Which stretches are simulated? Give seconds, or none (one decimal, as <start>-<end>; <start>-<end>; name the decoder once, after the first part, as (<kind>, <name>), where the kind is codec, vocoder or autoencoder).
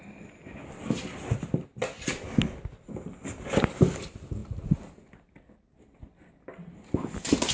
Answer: 0.0-1.7 (vocoder, BigVGAN v2); 3.8-7.5